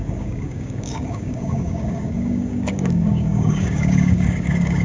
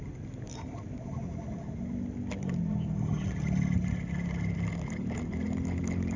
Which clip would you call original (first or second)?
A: second